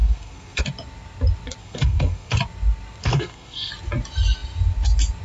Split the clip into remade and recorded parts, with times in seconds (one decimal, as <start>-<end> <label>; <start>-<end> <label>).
0.0-0.6 remade; 0.6-1.6 recorded; 1.6-2.4 remade; 2.4-3.0 recorded; 3.0-3.7 remade; 3.7-5.2 recorded